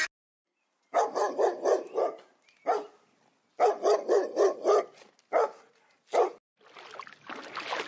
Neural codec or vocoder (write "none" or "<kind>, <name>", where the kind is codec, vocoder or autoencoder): none